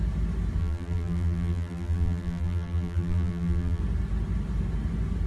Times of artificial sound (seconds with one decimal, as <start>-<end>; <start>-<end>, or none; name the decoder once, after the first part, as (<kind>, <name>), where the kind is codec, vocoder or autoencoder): 0.6-3.8 (vocoder, BigVGAN v2)